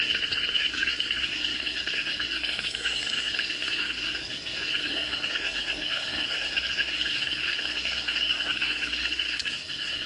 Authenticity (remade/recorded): remade